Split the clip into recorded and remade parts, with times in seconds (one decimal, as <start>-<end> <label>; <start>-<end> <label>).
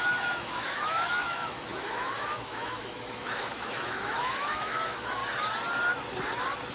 0.0-5.2 remade; 5.2-6.7 recorded